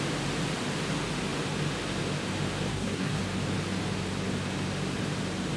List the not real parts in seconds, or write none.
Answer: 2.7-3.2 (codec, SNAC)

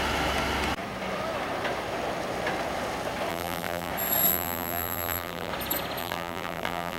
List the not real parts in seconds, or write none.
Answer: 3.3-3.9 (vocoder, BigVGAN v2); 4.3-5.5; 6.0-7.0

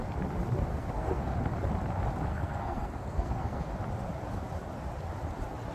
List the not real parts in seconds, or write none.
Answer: 0.7-1.3 (codec, SNAC); 2.3-3.7